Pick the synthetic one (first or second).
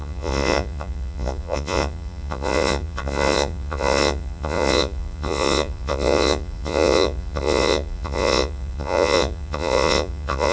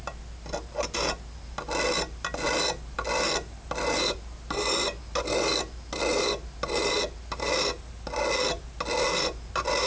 first